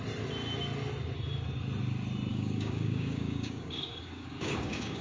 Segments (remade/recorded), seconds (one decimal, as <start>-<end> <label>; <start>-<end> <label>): 0.0-2.3 recorded; 2.3-5.0 remade